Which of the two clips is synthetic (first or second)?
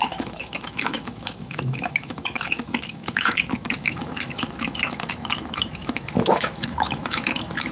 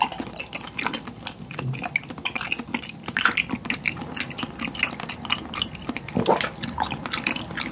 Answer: first